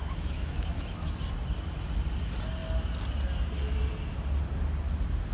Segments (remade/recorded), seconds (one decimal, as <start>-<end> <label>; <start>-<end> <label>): 0.0-1.2 remade; 1.2-5.3 recorded